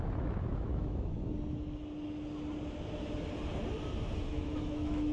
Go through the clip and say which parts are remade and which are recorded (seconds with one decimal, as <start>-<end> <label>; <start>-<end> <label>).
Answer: 0.0-1.2 remade; 1.2-4.3 recorded; 4.3-5.1 remade